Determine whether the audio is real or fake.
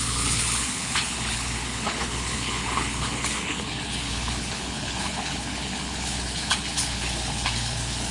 fake